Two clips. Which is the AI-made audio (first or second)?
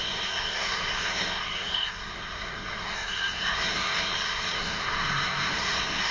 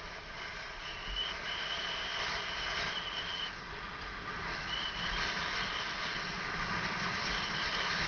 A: first